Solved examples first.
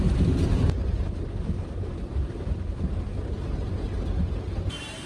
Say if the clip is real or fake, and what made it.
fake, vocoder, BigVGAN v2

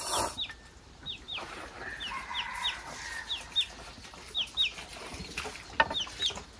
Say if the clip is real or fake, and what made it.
real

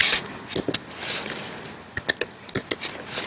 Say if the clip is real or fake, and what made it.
real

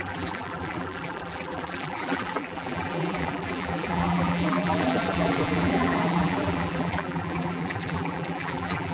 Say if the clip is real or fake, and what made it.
fake, vocoder, BigVGAN v2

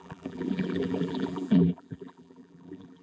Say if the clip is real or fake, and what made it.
fake, vocoder, BigVGAN v2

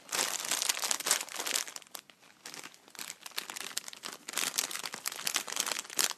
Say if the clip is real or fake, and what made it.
real